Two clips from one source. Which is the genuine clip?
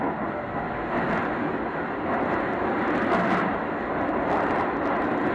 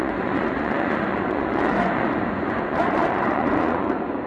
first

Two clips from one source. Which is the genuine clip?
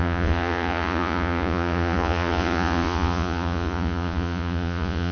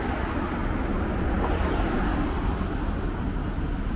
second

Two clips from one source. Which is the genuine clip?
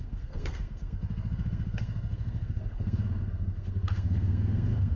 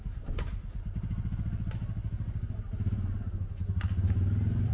second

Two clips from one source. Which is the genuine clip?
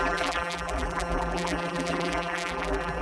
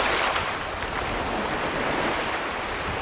second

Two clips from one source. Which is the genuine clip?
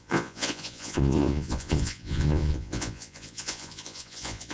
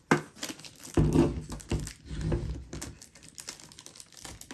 second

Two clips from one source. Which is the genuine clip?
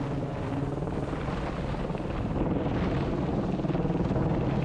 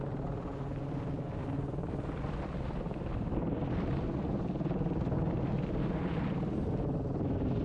first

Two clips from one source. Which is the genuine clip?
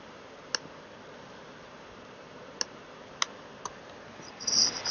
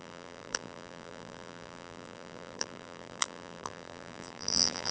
first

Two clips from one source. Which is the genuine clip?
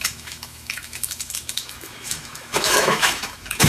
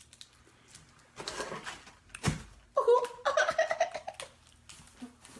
second